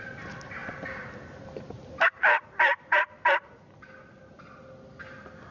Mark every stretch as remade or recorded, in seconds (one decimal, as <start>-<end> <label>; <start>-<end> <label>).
0.0-5.5 recorded